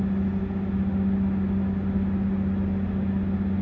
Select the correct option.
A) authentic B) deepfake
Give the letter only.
A